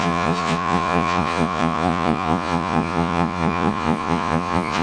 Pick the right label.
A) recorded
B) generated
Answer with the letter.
B